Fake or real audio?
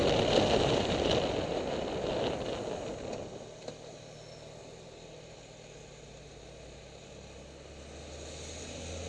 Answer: real